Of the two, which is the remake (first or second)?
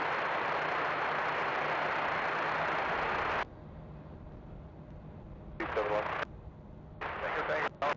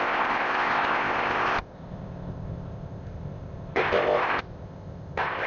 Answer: second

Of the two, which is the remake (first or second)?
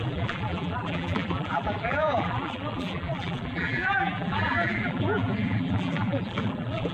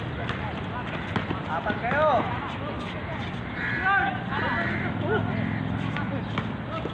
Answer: first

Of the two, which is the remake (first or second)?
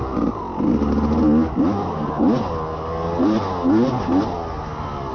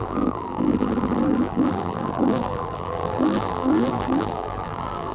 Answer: second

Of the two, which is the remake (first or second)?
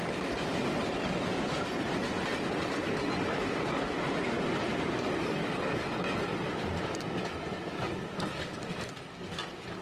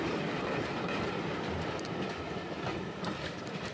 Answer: second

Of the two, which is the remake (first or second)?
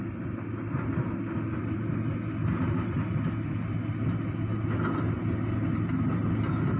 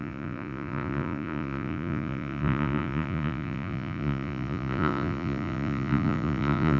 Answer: second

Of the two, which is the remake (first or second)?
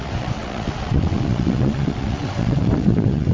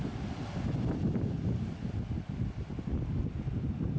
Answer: first